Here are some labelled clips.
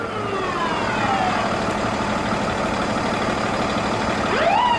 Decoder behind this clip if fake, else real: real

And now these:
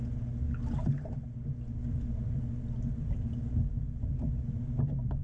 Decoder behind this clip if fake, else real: real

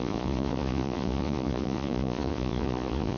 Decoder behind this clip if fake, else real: fake, vocoder, Vocos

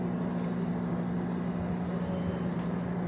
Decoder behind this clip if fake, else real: real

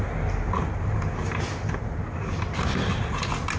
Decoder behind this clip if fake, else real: real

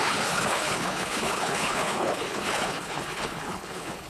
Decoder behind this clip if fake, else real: fake, codec, HILCodec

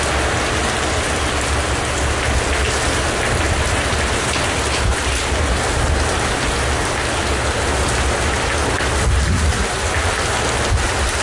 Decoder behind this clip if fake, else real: real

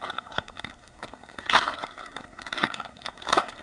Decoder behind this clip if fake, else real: fake, codec, SNAC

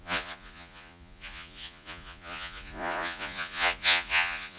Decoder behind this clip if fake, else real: fake, vocoder, Vocos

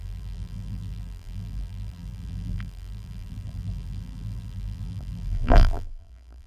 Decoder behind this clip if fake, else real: fake, vocoder, BigVGAN v2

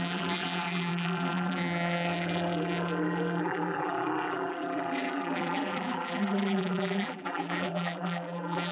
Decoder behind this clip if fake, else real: fake, vocoder, BigVGAN v2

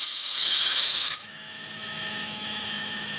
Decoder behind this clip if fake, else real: fake, autoencoder, DAC-VAE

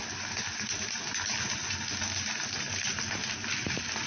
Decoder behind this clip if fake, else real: real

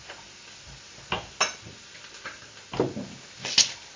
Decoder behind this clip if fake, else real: real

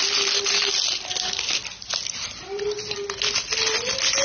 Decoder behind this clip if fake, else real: real